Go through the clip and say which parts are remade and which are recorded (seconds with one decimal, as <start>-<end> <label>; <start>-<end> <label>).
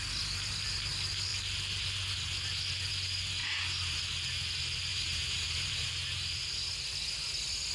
0.0-3.4 recorded; 3.4-4.0 remade; 4.0-4.9 recorded; 4.9-5.9 remade; 5.9-7.7 recorded